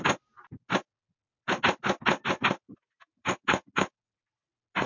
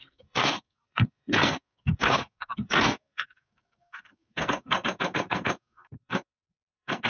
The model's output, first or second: second